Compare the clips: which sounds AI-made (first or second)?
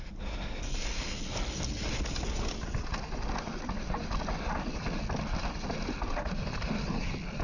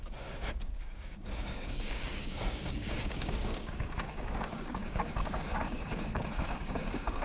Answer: second